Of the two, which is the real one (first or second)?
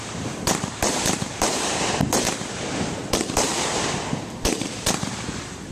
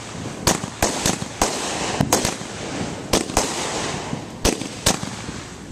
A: second